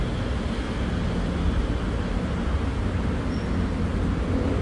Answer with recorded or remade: recorded